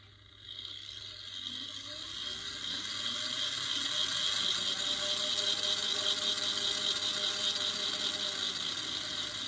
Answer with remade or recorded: recorded